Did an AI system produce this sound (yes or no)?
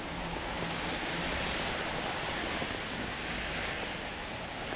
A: no